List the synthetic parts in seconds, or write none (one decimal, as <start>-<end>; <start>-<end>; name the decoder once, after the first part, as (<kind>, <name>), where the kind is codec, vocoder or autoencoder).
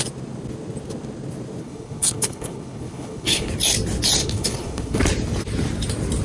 1.6-3.5 (codec, HILCodec); 4.2-5.0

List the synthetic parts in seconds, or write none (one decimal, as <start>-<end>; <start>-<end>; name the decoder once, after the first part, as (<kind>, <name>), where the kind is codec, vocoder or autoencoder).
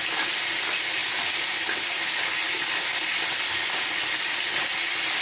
none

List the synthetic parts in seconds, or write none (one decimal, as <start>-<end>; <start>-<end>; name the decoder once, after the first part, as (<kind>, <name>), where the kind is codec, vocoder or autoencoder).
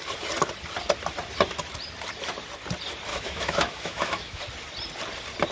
3.1-4.4 (autoencoder, DAC-VAE)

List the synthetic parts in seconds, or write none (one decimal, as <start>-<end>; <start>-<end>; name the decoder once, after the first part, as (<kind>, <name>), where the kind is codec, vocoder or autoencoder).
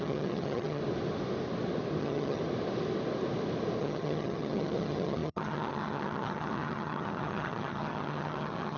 0.0-0.8 (vocoder, HiFi-GAN); 2.0-2.4; 3.8-8.8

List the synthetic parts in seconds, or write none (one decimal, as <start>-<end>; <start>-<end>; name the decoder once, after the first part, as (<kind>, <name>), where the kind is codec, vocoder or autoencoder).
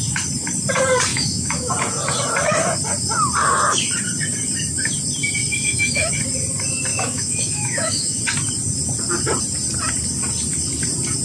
1.1-1.7 (autoencoder, DAC-VAE); 5.5-6.1; 6.9-8.2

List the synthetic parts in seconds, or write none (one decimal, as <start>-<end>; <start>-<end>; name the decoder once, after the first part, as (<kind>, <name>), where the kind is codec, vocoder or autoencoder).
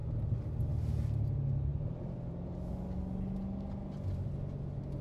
none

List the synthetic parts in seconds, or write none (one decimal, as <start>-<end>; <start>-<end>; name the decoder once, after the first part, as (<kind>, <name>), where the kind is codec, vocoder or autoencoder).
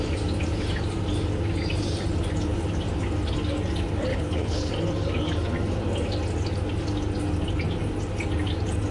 4.1-4.7 (codec, HILCodec)